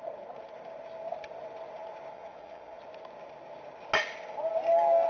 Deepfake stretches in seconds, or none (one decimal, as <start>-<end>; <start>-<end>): 2.1-2.8